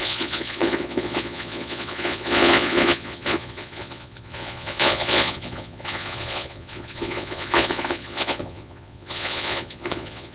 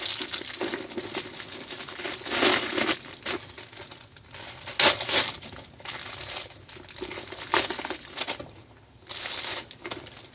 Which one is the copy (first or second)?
first